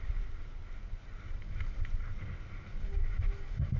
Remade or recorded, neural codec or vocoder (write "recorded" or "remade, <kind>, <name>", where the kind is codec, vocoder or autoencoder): recorded